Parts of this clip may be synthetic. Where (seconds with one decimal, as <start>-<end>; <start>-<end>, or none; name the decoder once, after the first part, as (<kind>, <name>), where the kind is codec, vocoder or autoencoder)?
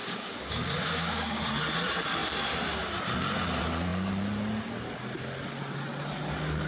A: 0.0-1.5 (codec, DAC)